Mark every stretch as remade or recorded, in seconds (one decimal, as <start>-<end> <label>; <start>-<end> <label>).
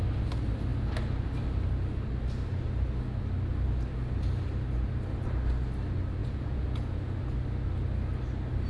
0.0-6.2 recorded; 6.2-7.2 remade; 7.2-8.7 recorded